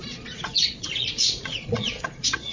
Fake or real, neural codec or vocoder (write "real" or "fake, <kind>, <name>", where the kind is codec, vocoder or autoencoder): fake, vocoder, Vocos